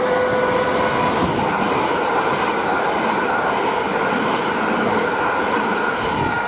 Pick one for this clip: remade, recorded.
recorded